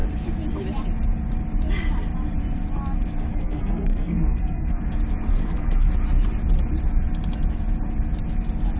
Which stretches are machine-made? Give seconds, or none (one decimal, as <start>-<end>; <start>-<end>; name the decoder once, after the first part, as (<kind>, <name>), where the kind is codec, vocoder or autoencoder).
3.3-4.8 (codec, SNAC); 5.3-5.9